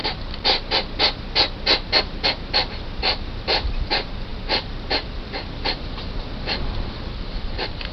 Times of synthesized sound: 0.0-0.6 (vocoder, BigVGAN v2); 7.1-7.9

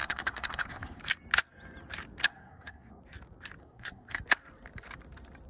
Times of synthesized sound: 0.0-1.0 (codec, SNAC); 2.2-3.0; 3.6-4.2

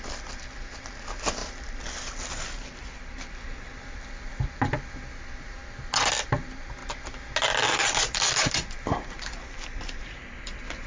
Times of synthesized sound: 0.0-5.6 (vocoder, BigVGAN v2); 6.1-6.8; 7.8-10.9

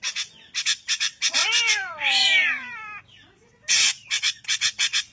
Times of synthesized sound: 1.4-4.4 (vocoder, BigVGAN v2)

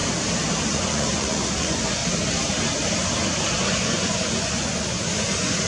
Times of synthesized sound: 0.5-2.0 (vocoder, Vocos); 3.6-5.7

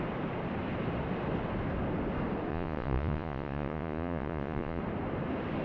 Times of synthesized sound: 2.5-4.8 (vocoder, Vocos)